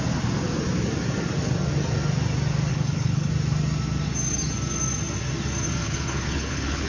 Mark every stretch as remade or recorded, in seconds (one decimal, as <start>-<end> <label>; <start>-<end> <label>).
0.0-2.7 recorded; 2.7-3.3 remade; 3.3-5.8 recorded; 5.8-6.9 remade

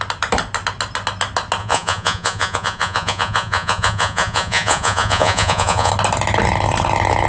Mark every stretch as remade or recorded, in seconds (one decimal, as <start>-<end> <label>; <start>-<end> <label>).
0.0-1.6 recorded; 1.6-5.9 remade; 5.9-7.3 recorded